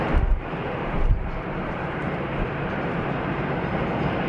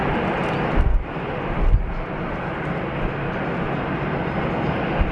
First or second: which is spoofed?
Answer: first